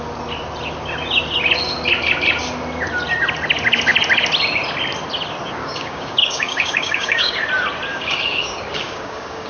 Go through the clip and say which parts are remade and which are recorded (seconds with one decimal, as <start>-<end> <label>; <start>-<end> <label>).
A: 0.0-5.6 recorded; 5.6-7.4 remade; 7.4-7.9 recorded; 7.9-9.5 remade